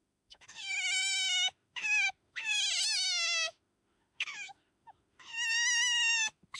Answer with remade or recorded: remade